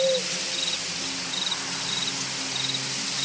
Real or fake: real